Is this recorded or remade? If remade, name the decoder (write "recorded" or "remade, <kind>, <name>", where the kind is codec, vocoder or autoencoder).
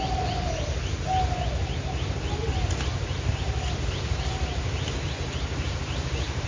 recorded